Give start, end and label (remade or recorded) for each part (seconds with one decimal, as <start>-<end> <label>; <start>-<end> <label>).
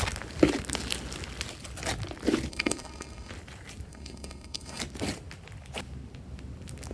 0.0-2.5 recorded; 2.5-3.3 remade; 3.3-3.9 recorded; 3.9-4.8 remade; 4.8-6.9 recorded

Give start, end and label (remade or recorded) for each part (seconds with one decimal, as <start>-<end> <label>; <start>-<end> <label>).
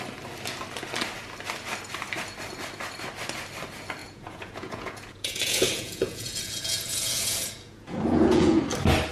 0.0-4.0 recorded; 4.0-8.6 remade; 8.6-9.1 recorded